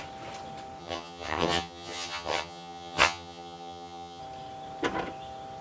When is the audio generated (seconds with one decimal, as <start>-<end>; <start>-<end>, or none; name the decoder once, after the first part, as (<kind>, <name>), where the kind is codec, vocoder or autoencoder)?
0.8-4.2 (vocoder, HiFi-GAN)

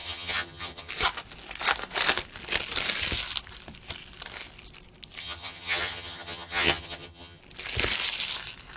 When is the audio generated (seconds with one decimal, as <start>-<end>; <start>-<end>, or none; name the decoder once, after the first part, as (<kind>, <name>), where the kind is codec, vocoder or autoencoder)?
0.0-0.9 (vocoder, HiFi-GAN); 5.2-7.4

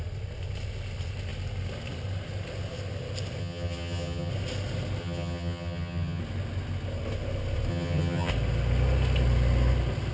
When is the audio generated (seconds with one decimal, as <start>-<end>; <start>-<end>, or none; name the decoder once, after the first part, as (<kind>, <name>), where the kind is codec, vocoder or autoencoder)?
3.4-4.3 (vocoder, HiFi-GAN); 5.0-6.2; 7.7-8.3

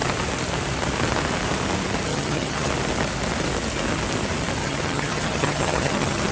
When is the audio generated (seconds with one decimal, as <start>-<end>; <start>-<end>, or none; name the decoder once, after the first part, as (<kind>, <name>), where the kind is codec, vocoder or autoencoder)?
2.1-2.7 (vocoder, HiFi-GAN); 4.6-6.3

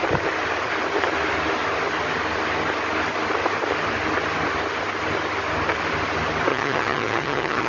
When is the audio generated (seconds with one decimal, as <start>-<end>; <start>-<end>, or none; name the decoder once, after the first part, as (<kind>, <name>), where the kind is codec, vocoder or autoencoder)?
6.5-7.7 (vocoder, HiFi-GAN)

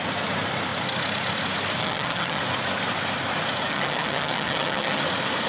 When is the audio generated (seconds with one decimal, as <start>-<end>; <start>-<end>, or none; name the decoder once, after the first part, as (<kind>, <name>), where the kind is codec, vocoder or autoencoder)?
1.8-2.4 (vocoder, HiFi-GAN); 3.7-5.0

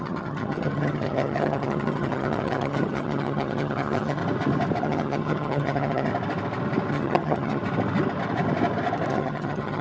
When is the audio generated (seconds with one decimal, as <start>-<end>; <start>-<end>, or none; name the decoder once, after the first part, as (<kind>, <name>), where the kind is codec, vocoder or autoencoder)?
0.0-4.2 (vocoder, HiFi-GAN); 4.8-6.1; 6.9-7.6; 9.1-9.8

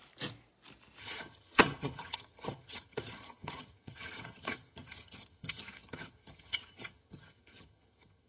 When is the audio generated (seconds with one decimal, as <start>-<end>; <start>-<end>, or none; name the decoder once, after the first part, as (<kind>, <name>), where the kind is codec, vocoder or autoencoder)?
1.0-8.3 (vocoder, HiFi-GAN)